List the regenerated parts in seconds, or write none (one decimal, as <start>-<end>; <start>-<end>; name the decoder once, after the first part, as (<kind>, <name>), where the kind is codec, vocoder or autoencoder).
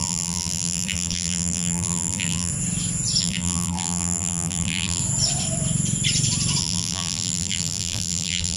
0.0-2.5 (vocoder, BigVGAN v2); 3.2-5.0; 6.6-8.6